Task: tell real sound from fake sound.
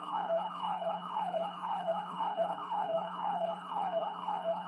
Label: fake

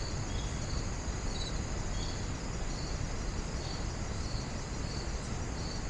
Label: real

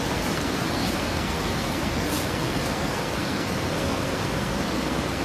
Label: fake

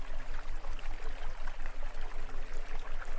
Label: real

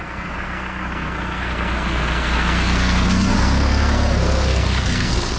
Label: fake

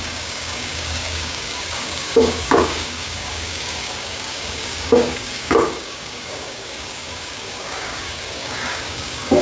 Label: fake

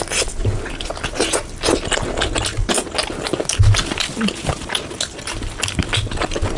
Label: real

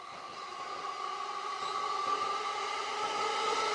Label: real